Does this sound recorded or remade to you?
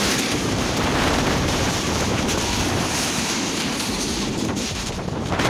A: remade